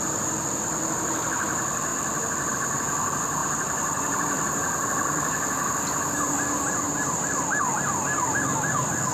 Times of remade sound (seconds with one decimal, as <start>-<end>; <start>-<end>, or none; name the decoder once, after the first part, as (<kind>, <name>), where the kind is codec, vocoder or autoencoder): 3.4-7.6 (vocoder, BigVGAN v2)